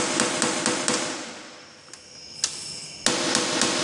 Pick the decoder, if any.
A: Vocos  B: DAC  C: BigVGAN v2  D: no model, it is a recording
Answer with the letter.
D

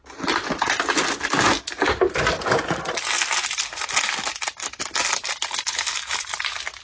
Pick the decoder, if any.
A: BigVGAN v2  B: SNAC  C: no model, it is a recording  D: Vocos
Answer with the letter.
C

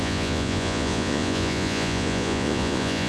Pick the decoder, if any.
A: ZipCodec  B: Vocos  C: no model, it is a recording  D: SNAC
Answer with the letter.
B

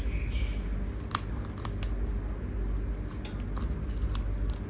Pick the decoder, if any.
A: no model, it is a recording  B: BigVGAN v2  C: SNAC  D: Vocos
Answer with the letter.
A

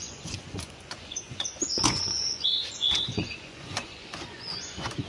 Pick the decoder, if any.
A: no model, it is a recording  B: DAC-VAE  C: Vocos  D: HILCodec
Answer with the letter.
C